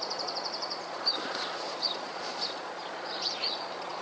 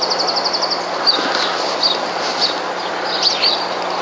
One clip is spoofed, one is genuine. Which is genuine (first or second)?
second